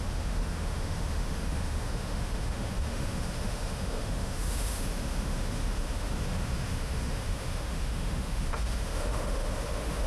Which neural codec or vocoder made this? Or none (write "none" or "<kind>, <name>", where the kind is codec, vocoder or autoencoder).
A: autoencoder, DAC-VAE